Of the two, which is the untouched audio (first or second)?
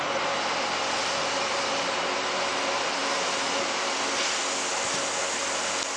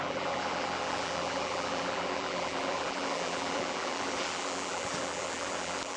first